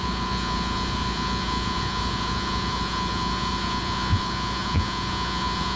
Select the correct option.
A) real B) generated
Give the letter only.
B